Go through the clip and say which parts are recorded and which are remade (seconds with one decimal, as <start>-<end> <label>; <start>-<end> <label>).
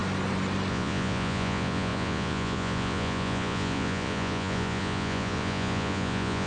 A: 0.0-0.7 recorded; 0.7-6.5 remade